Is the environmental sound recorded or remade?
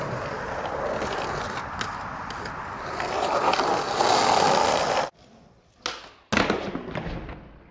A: recorded